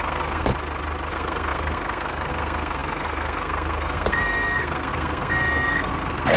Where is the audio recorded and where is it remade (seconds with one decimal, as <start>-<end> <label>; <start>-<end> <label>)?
0.0-0.5 remade; 0.5-1.1 recorded; 1.1-6.4 remade